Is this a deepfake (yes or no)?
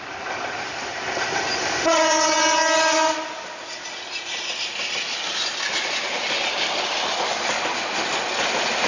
no